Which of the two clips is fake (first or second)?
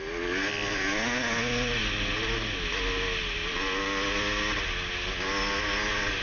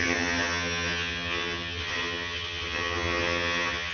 second